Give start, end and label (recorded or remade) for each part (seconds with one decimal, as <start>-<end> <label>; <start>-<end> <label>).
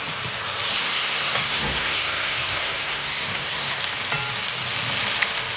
0.0-0.8 recorded; 0.8-3.8 remade; 3.8-5.6 recorded